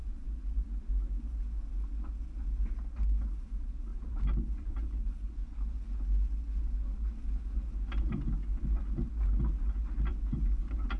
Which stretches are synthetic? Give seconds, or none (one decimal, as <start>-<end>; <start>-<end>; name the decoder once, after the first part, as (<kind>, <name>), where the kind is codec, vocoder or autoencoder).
none